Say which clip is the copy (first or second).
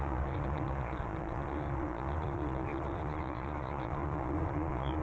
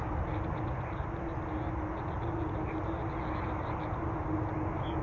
first